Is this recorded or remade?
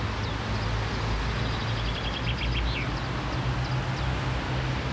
recorded